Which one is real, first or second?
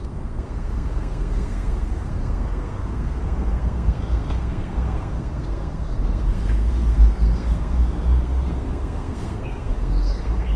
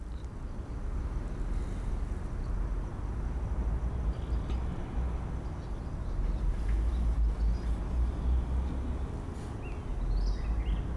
second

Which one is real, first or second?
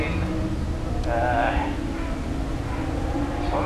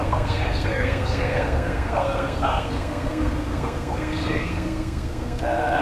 first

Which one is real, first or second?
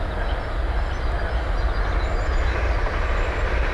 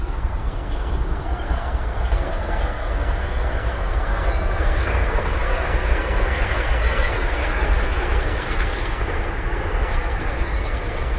first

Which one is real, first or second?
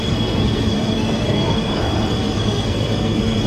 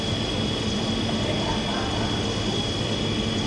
second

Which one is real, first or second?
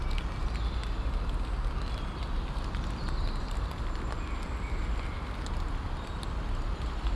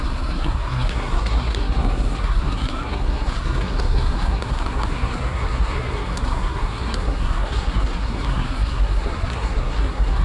first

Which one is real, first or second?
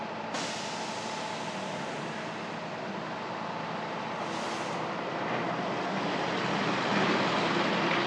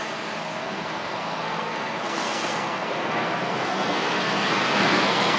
first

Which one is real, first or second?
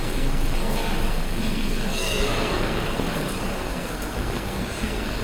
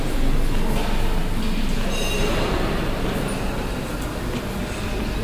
second